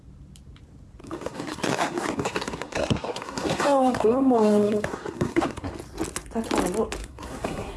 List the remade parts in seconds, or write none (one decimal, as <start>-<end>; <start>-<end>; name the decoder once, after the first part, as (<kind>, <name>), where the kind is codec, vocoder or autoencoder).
1.0-5.7 (codec, SNAC); 7.0-7.8